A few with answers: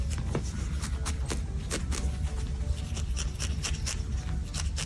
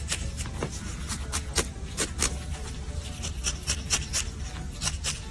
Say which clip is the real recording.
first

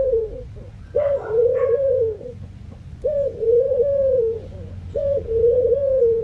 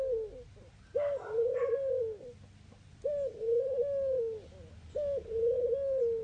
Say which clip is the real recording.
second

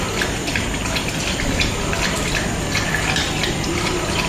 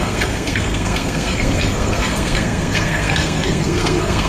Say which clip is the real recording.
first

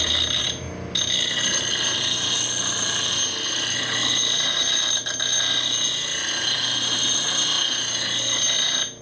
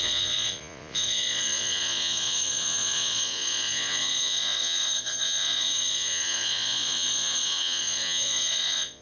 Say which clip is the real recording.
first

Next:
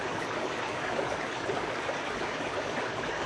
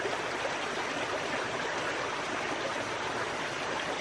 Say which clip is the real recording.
second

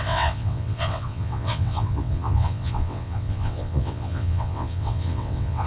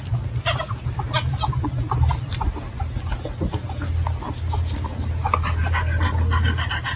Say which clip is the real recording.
second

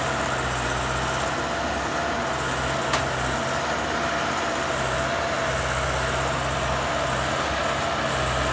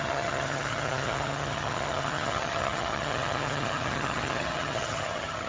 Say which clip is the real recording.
first